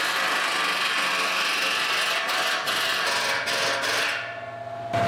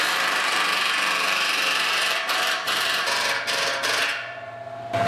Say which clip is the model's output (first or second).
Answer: second